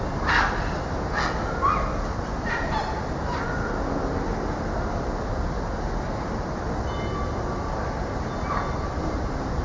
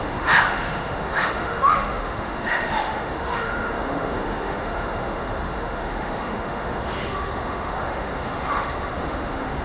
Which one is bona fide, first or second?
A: first